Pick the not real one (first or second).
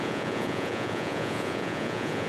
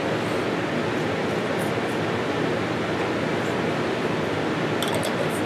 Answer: first